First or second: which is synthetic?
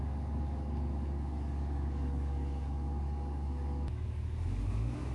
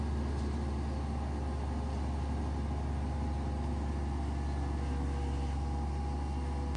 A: first